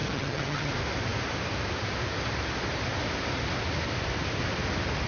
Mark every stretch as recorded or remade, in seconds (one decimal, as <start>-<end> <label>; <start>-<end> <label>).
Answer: 0.0-0.7 remade; 0.7-5.1 recorded